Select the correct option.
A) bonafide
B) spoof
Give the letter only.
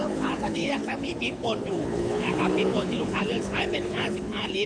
B